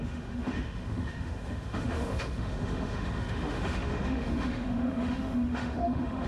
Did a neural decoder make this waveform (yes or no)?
yes